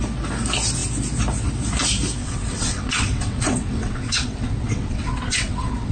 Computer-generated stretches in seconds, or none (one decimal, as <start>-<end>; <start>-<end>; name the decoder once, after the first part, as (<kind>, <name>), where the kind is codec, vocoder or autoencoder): 2.2-5.9 (vocoder, WaveNeXt)